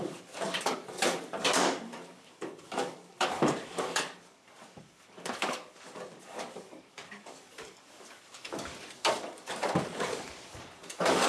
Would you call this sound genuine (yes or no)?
no